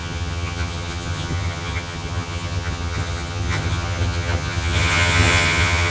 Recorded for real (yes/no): no